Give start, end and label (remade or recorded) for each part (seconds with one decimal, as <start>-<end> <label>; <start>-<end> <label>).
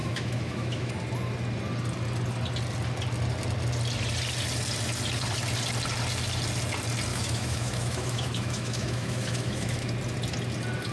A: 0.0-0.9 remade; 0.9-7.1 recorded; 7.1-9.9 remade; 9.9-10.9 recorded